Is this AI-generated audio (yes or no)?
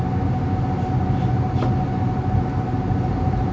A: no